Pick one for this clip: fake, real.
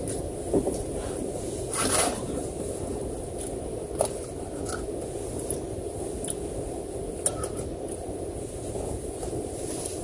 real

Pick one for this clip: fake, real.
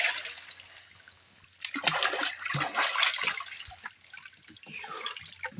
real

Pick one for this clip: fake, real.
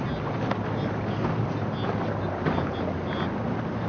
real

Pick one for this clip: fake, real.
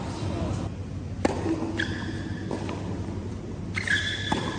real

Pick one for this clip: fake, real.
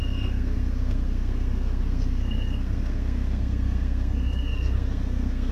fake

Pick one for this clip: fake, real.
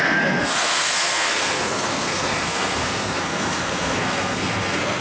fake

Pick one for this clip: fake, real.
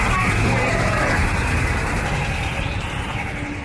real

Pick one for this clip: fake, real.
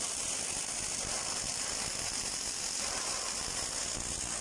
real